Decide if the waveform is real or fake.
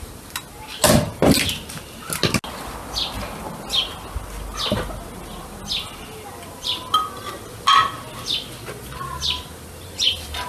real